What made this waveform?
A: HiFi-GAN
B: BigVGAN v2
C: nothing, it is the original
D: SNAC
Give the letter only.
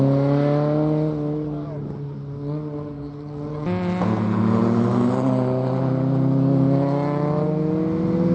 C